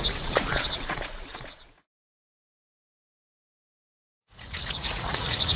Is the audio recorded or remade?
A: remade